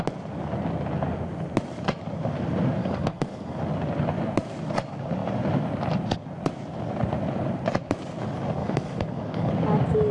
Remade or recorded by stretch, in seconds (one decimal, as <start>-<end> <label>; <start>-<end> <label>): 0.0-2.8 recorded; 2.8-3.6 remade; 3.6-8.6 recorded; 8.6-9.5 remade; 9.5-10.1 recorded